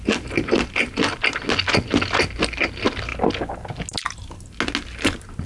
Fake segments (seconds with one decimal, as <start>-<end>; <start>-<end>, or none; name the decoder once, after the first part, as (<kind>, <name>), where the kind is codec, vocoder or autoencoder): none